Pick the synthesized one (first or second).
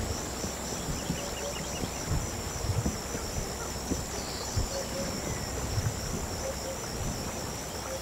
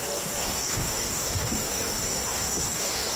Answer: second